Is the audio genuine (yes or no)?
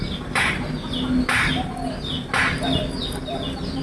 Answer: yes